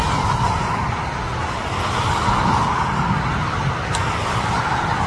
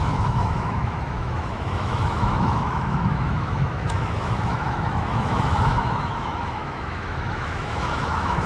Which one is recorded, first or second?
first